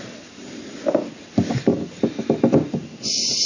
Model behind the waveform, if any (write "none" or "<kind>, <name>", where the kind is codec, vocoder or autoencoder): none